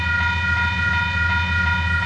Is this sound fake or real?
real